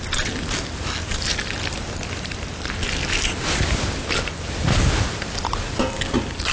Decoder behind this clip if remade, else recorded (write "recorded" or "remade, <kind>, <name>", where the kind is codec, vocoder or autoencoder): recorded